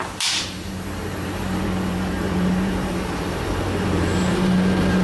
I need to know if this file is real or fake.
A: fake